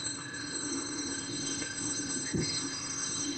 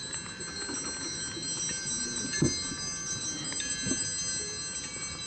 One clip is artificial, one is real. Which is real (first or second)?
second